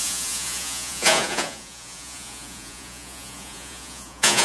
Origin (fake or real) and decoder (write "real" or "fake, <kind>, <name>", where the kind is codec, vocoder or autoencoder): fake, vocoder, Vocos